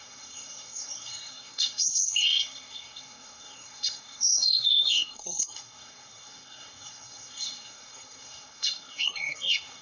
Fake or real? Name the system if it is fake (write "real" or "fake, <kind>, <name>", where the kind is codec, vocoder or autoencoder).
fake, codec, SNAC